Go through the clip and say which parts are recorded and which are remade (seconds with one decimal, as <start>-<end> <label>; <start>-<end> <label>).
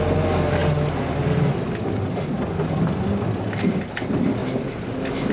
0.0-5.3 recorded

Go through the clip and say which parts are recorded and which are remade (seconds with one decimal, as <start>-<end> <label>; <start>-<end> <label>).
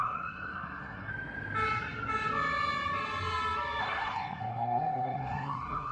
0.0-1.1 remade; 1.1-3.8 recorded; 3.8-5.9 remade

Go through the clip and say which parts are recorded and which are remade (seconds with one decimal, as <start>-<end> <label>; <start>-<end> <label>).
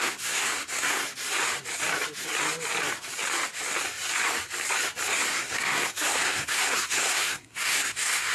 0.0-1.0 remade; 1.0-5.3 recorded; 5.3-8.3 remade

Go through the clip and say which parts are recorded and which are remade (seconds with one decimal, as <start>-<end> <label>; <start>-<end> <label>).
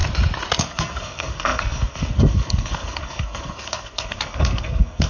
0.0-0.6 recorded; 0.6-5.1 remade